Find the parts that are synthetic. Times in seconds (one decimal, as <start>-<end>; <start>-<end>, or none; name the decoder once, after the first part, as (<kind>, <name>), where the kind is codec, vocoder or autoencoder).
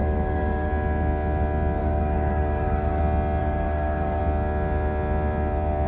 0.0-0.7 (codec, DAC); 1.8-3.0; 3.4-4.2